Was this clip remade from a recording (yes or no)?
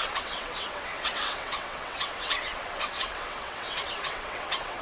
yes